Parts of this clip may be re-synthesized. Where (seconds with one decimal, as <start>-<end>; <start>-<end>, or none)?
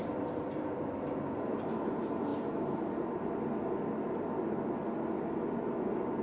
none